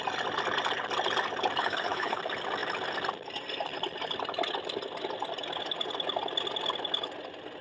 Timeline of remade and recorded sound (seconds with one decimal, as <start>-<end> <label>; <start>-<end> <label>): 0.0-1.6 recorded; 1.6-2.2 remade; 2.2-7.6 recorded